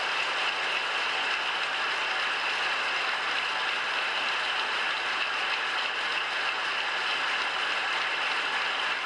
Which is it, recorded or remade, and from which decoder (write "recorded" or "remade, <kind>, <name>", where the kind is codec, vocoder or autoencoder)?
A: recorded